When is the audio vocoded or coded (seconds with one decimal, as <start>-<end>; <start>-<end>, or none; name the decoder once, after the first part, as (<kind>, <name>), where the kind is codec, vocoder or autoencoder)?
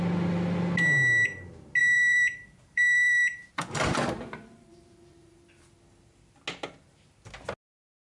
1.8-5.4 (vocoder, BigVGAN v2)